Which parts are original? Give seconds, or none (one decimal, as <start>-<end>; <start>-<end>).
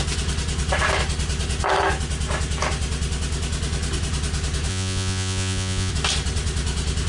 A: 0.0-4.7; 5.9-7.1